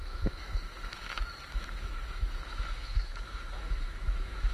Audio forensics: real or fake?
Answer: fake